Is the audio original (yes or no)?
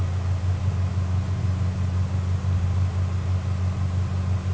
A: yes